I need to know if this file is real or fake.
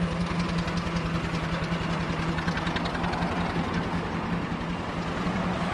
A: real